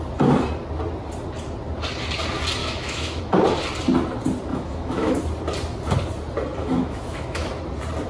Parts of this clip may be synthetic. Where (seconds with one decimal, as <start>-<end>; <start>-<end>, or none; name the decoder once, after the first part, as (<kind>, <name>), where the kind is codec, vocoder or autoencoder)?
2.6-3.2 (autoencoder, DAC-VAE); 4.5-5.2; 6.6-7.5